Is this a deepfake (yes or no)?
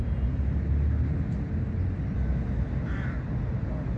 no